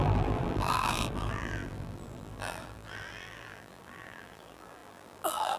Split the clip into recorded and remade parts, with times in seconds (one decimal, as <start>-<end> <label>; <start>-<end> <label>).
0.0-5.6 remade